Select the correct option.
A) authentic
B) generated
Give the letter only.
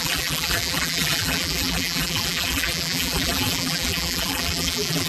B